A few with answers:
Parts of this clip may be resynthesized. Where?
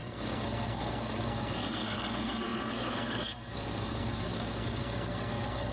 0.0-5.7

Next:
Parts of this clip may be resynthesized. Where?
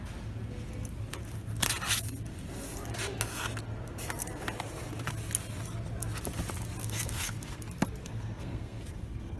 6.8-7.6; 8.0-9.4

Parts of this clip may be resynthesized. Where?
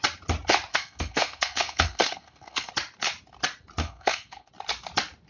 0.7-2.7; 3.8-4.5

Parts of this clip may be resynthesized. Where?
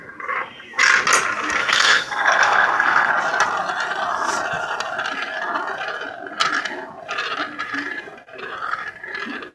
1.6-3.1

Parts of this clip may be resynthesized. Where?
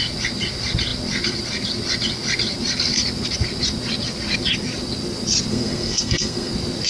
5.5-6.5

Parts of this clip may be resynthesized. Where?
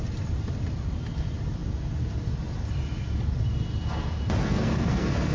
4.4-5.3